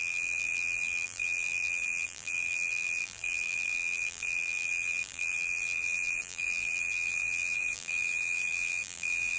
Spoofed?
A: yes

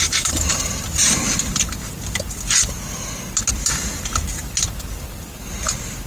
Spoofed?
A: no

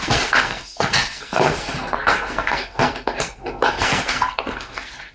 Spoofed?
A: yes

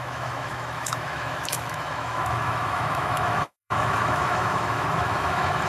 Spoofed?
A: yes